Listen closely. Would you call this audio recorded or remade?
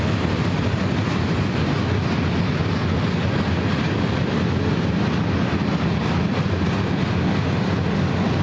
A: recorded